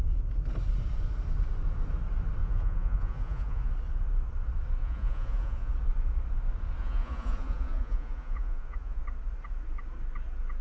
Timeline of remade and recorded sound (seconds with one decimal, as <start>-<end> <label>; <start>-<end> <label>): 0.0-2.4 recorded; 2.4-3.7 remade; 3.7-4.8 recorded; 4.8-5.7 remade; 5.7-6.8 recorded; 6.8-9.0 remade; 9.0-10.6 recorded